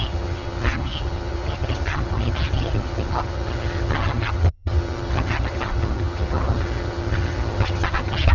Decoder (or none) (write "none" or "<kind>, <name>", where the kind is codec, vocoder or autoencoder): vocoder, HiFi-GAN